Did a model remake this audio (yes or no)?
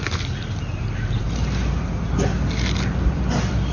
yes